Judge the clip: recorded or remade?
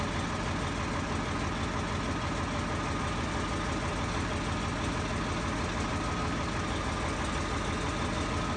recorded